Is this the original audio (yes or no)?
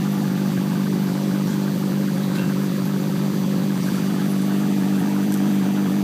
no